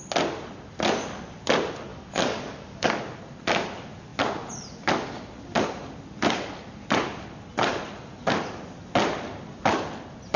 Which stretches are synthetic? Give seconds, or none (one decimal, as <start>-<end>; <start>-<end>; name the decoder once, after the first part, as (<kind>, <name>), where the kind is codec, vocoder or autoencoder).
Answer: 1.9-3.0 (codec, DAC)